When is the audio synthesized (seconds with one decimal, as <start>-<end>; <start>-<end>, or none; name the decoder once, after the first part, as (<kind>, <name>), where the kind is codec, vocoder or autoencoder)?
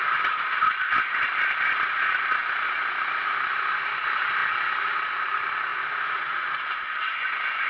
5.7-7.7 (vocoder, Vocos)